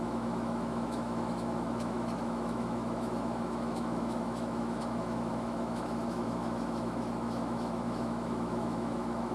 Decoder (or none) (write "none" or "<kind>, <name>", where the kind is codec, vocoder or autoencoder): autoencoder, DAC-VAE